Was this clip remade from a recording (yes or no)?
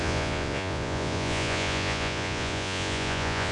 yes